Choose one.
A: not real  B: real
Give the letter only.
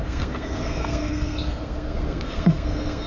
A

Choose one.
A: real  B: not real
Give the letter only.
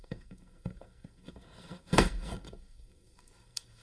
B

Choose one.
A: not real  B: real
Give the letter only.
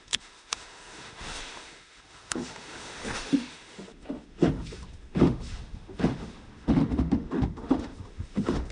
A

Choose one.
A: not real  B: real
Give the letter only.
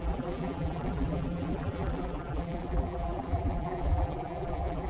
A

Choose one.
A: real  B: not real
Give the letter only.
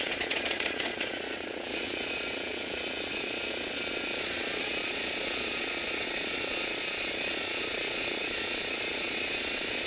B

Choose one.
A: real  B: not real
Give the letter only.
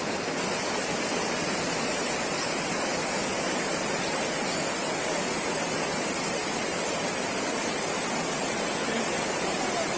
A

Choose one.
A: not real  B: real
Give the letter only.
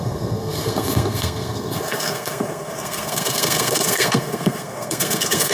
A